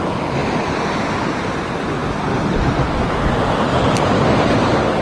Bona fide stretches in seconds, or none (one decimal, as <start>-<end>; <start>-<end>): 0.0-5.0